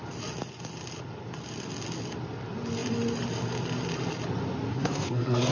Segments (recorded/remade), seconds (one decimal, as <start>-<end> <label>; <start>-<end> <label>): 0.0-4.7 recorded; 4.7-5.5 remade